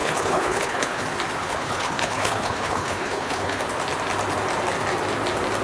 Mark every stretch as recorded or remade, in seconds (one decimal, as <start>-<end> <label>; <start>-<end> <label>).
0.0-1.0 remade; 1.0-1.4 recorded; 1.4-3.6 remade; 3.6-5.6 recorded